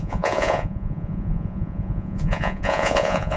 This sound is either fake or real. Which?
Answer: fake